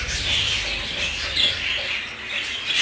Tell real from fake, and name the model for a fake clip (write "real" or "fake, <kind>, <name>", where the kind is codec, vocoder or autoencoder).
real